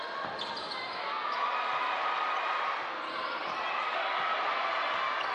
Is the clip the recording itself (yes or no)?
yes